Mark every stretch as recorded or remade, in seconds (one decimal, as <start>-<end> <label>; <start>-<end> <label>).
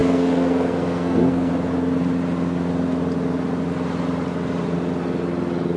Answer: 0.0-1.5 remade; 1.5-5.8 recorded